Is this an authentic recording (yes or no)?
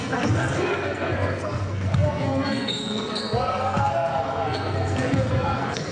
no